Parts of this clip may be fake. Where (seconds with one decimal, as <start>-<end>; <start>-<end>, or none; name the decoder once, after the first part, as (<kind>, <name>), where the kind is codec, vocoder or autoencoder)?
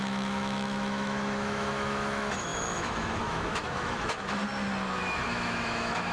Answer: 0.0-4.4 (autoencoder, DAC-VAE); 5.0-6.1